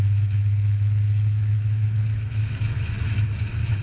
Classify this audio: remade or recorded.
remade